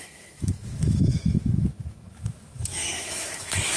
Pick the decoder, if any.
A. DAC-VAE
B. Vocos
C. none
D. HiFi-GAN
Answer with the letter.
A